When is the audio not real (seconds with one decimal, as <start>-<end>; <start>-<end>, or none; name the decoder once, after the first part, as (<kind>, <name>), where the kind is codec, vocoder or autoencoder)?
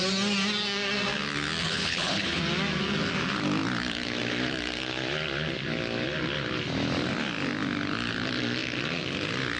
1.6-2.4 (codec, HILCodec)